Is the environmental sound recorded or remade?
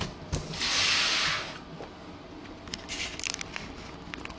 recorded